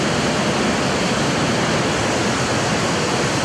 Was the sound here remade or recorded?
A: recorded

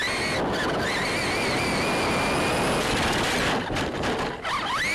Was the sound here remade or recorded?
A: recorded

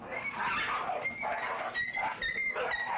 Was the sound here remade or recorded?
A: recorded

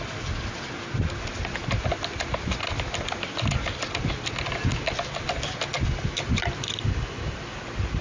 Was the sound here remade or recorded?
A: recorded